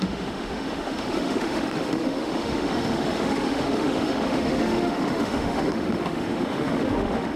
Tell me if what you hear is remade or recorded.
remade